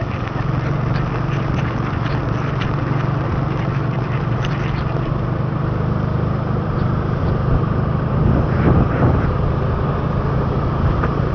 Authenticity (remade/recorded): recorded